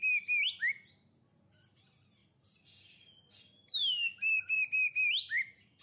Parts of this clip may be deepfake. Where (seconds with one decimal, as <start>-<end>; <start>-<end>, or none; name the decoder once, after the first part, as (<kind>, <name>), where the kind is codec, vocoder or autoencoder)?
none